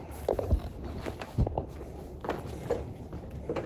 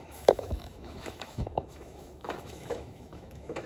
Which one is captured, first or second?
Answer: first